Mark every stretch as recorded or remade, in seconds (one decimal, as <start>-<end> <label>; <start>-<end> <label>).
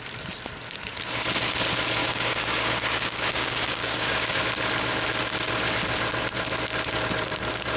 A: 0.0-2.0 recorded; 2.0-4.4 remade; 4.4-7.8 recorded